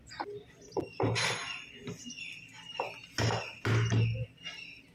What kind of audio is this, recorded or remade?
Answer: recorded